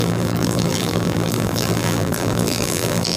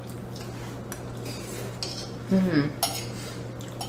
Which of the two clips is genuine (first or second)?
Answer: second